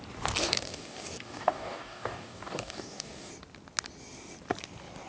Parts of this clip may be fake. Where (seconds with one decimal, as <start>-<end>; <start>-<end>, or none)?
0.4-3.3